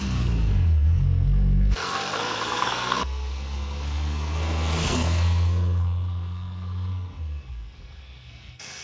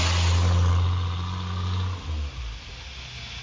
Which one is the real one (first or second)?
second